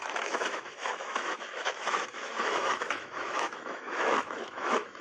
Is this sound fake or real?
fake